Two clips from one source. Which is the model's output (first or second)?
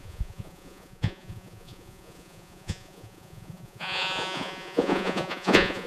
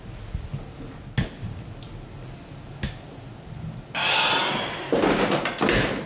first